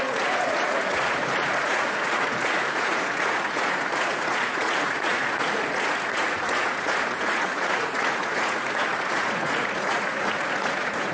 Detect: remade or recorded remade